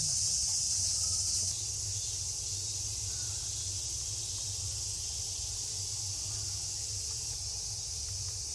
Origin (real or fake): real